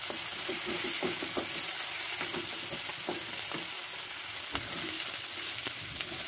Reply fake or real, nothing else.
real